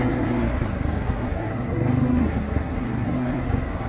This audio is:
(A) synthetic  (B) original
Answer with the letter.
A